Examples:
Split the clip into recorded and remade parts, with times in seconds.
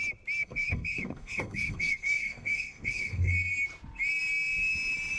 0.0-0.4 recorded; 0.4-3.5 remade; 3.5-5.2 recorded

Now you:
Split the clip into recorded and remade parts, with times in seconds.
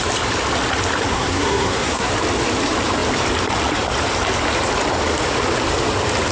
0.0-1.1 recorded; 1.1-2.1 remade; 2.1-6.3 recorded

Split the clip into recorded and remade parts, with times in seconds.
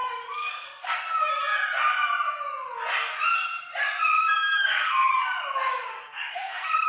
0.0-0.5 recorded; 0.5-1.4 remade; 1.4-4.2 recorded; 4.2-5.1 remade; 5.1-6.0 recorded; 6.0-6.9 remade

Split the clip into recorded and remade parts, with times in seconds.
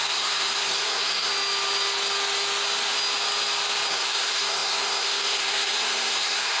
0.0-1.3 remade; 1.3-3.9 recorded; 3.9-6.6 remade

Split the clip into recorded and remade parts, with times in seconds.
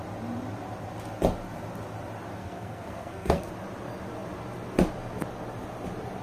0.0-2.4 recorded; 2.4-3.5 remade; 3.5-6.2 recorded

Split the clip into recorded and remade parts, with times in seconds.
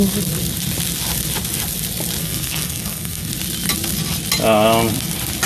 0.0-2.2 recorded; 2.2-3.3 remade; 3.3-5.5 recorded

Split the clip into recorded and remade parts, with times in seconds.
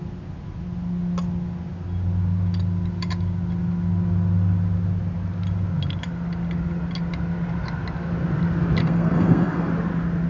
0.0-8.8 recorded; 8.8-9.7 remade; 9.7-10.3 recorded